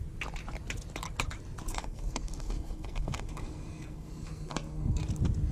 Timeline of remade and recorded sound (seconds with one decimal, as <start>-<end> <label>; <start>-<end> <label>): 0.0-1.7 recorded; 1.7-5.0 remade; 5.0-5.5 recorded